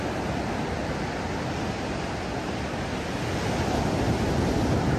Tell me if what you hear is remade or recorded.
recorded